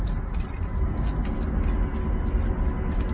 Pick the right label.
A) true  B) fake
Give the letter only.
A